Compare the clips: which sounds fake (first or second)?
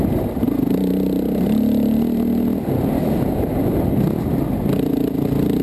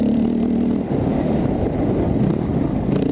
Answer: second